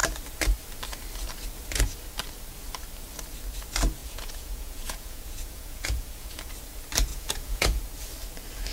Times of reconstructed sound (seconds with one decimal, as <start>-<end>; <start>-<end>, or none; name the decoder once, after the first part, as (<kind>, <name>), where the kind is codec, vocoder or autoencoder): 4.0-6.5 (vocoder, Vocos); 7.1-7.8